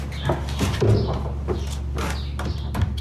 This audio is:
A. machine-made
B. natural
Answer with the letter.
B